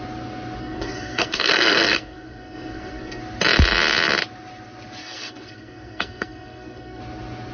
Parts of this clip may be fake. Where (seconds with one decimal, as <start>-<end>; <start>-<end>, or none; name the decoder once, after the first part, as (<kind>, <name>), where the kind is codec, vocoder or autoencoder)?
0.6-3.2 (codec, SNAC); 5.0-7.0